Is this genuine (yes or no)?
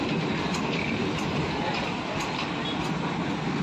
yes